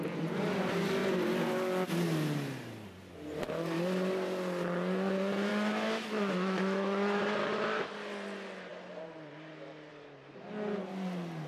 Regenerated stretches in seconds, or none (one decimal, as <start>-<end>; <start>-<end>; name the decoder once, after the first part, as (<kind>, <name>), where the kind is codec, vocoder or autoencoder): 5.5-7.2 (autoencoder, DAC-VAE)